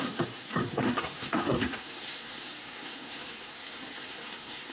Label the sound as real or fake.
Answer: fake